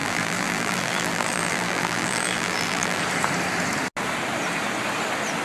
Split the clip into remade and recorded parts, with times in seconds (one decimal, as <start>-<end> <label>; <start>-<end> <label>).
0.0-3.0 remade; 3.0-5.4 recorded